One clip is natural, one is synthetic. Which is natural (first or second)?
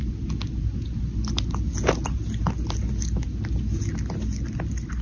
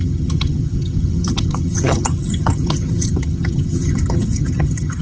first